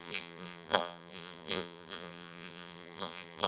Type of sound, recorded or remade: remade